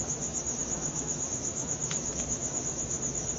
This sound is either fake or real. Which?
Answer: fake